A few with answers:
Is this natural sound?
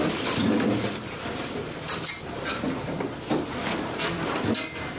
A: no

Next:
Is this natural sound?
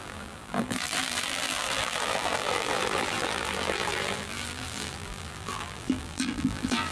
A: no